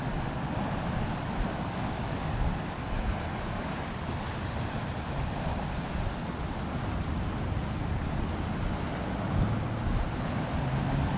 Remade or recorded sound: recorded